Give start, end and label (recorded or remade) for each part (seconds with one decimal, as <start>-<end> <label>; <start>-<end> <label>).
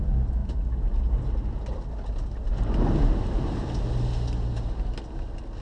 0.0-5.6 recorded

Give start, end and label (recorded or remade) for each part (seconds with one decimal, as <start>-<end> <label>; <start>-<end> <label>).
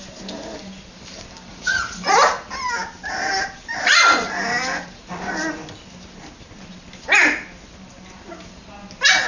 0.0-1.5 recorded; 1.5-2.1 remade; 2.1-9.3 recorded